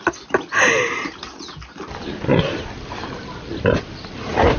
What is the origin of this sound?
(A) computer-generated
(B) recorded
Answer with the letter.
B